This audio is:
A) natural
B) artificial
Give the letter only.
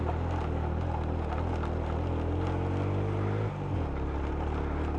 A